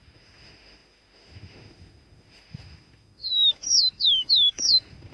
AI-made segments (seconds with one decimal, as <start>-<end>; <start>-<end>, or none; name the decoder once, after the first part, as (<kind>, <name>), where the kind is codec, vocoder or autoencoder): 0.0-5.1 (autoencoder, DAC-VAE)

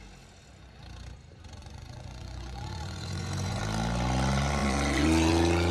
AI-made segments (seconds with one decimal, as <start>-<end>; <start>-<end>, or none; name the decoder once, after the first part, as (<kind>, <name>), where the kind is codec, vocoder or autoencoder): 1.6-3.6 (vocoder, Vocos); 4.6-5.3

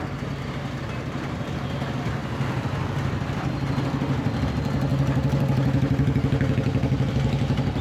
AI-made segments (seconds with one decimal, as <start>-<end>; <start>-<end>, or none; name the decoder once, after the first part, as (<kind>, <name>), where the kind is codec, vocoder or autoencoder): 2.2-4.5 (vocoder, BigVGAN v2)

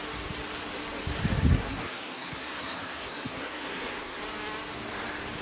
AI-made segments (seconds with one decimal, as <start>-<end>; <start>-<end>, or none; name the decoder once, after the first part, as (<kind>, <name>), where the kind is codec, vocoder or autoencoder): 1.5-4.2 (codec, SNAC)

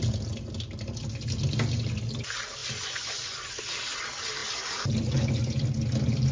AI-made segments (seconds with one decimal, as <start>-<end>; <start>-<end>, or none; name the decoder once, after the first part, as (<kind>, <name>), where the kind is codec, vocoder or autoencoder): 2.6-3.6 (vocoder, Vocos)